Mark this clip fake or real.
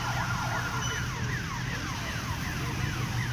real